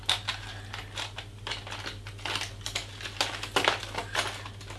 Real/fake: real